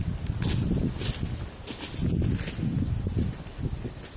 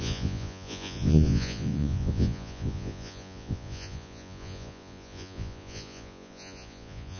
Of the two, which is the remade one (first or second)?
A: second